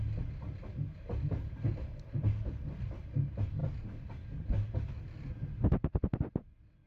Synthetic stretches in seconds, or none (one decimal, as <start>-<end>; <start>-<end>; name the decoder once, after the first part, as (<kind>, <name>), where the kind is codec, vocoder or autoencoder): none